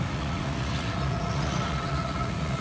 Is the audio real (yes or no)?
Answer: no